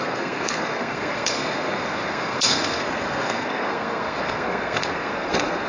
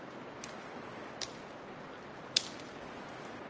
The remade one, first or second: first